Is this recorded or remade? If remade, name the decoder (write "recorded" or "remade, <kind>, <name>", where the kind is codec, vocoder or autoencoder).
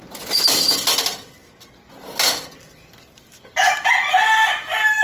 recorded